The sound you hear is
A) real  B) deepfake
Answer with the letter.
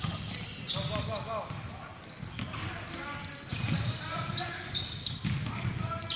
A